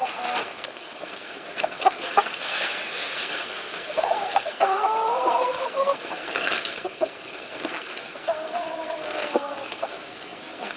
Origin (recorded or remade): remade